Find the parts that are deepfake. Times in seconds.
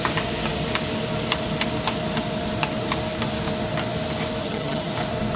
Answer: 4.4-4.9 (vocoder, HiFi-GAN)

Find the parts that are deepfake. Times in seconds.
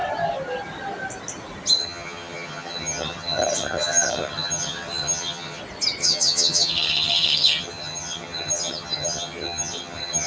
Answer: 1.8-5.6 (vocoder, HiFi-GAN); 6.0-10.3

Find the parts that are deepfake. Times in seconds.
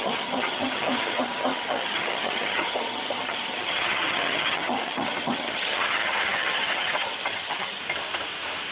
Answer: 0.0-7.8 (vocoder, HiFi-GAN)